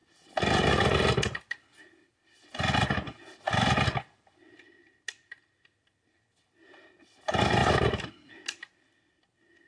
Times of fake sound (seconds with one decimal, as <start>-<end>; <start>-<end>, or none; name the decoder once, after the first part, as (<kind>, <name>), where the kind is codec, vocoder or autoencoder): none